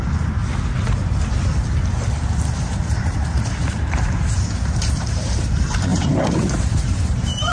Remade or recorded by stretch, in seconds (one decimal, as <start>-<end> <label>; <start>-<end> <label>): 0.0-0.4 remade; 0.4-2.6 recorded; 2.6-7.5 remade